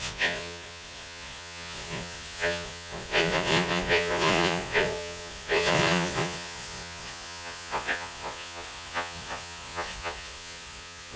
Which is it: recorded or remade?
remade